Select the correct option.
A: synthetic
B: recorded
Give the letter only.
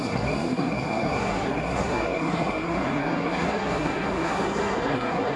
A